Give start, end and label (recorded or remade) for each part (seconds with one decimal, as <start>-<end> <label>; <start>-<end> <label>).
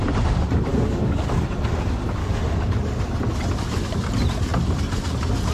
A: 0.0-0.7 recorded; 0.7-1.4 remade; 1.4-2.2 recorded; 2.2-2.7 remade; 2.7-5.5 recorded